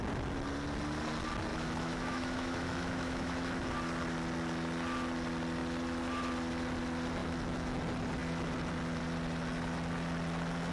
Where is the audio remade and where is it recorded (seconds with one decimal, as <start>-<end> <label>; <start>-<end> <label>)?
0.0-1.5 recorded; 1.5-3.7 remade; 3.7-7.2 recorded; 7.2-7.8 remade; 7.8-10.7 recorded